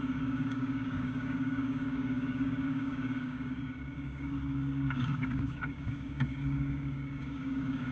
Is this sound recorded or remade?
remade